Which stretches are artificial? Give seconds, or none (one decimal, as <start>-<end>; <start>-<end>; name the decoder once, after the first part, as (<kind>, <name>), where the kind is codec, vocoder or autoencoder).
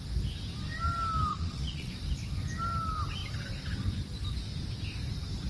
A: 1.3-1.9 (vocoder, Vocos)